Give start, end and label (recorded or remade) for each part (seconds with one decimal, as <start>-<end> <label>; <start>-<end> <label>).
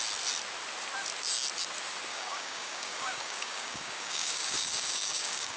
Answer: 0.0-2.1 recorded; 2.1-5.6 remade